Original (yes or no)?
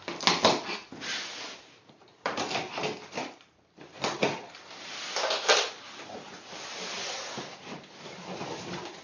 yes